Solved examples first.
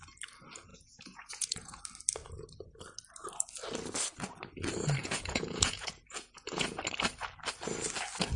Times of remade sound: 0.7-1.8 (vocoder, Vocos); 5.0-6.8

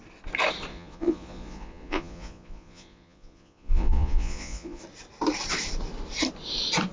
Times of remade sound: 0.7-4.8 (vocoder, Vocos)

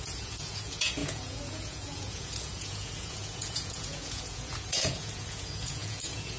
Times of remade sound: 0.0-6.4 (vocoder, Vocos)

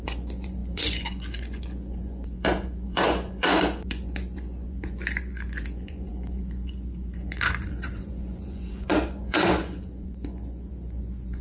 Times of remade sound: 0.0-11.4 (vocoder, Vocos)

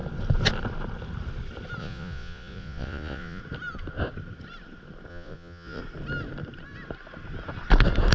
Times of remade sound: 1.8-3.4 (vocoder, Vocos); 5.1-5.8